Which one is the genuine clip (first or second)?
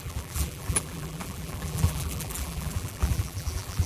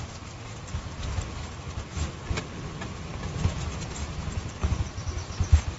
second